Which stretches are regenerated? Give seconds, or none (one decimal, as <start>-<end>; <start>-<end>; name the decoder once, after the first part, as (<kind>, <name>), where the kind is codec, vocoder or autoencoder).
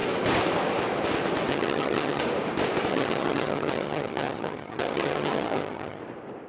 1.5-2.2 (vocoder, HiFi-GAN); 2.9-6.0